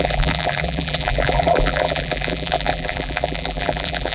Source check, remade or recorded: remade